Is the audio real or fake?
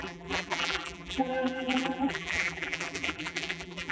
fake